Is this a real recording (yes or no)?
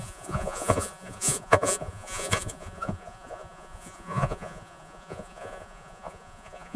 no